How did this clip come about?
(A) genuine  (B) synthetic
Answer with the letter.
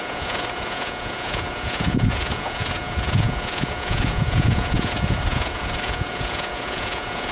B